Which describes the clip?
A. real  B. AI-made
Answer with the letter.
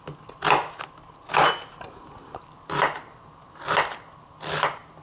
A